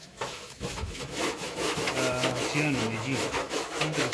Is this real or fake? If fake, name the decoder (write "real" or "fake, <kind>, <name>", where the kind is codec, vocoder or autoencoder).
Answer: fake, autoencoder, DAC-VAE